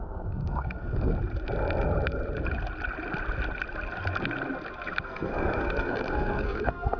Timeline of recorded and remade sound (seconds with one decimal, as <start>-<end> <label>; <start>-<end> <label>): 0.0-1.1 remade; 1.1-5.0 recorded; 5.0-7.0 remade